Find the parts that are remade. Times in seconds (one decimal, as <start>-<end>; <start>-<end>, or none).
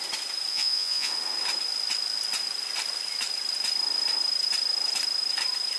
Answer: 0.5-1.1